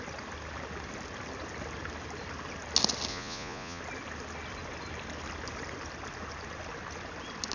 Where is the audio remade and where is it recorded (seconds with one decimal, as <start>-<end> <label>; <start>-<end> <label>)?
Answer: 0.0-3.1 recorded; 3.1-3.8 remade; 3.8-7.5 recorded